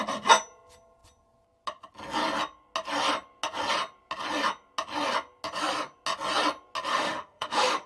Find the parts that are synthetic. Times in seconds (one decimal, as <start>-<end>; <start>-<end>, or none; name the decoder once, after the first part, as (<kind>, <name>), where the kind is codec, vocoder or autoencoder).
6.9-7.9 (autoencoder, DAC-VAE)